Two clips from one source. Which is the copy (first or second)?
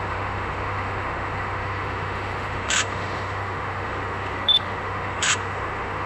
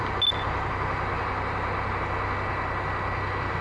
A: first